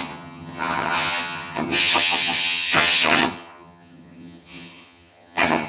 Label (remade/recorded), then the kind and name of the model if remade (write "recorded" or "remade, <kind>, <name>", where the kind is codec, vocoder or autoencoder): remade, vocoder, HiFi-GAN